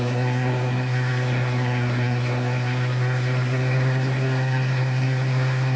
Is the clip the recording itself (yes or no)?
no